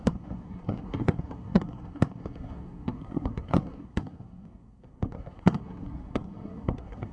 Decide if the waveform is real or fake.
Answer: fake